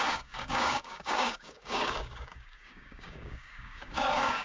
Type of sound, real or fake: fake